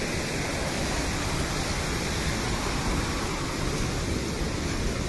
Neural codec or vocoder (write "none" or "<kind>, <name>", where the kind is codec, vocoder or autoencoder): none